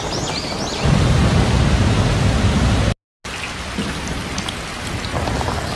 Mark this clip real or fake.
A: real